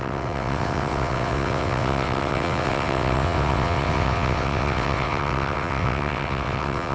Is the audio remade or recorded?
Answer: remade